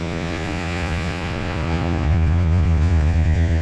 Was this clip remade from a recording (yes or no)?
yes